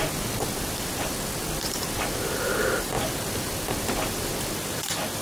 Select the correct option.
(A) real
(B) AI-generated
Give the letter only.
B